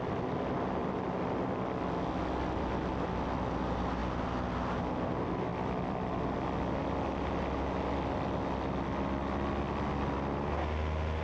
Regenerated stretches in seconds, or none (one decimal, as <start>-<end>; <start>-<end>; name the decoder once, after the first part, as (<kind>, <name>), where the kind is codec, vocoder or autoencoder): 5.5-6.1 (vocoder, BigVGAN v2)